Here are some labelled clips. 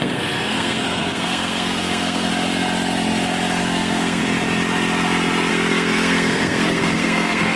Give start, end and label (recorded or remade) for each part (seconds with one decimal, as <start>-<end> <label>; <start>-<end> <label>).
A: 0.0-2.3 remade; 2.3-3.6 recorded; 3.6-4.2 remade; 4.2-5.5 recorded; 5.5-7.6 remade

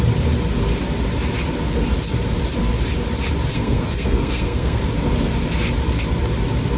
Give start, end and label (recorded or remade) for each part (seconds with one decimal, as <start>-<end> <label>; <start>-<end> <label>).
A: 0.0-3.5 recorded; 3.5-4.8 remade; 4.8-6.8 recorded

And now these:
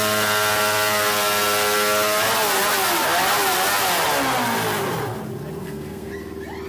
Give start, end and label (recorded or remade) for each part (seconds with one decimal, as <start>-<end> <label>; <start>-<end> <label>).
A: 0.0-5.6 recorded; 5.6-6.1 remade; 6.1-6.7 recorded

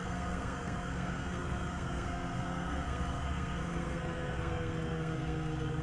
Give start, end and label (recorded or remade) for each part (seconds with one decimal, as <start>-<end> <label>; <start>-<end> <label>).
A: 0.0-5.8 remade

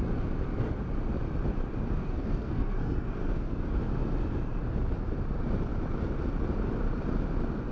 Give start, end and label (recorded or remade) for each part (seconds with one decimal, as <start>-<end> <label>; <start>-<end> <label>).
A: 0.0-2.0 recorded; 2.0-3.8 remade; 3.8-7.7 recorded